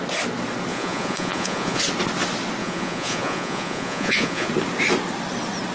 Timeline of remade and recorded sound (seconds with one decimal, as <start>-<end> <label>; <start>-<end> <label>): 0.0-0.7 recorded; 0.7-1.8 remade; 1.8-2.6 recorded; 2.6-4.5 remade; 4.5-5.7 recorded